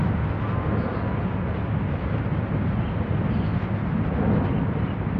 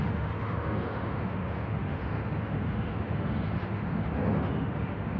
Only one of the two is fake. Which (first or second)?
second